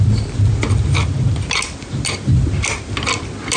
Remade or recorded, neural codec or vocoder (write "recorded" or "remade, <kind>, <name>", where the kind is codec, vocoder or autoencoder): recorded